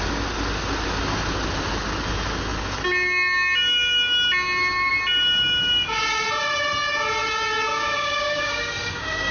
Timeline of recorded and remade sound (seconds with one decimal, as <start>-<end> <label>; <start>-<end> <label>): 0.0-7.7 recorded; 7.7-9.3 remade